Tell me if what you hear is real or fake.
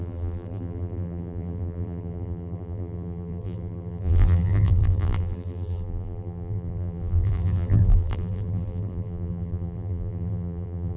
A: fake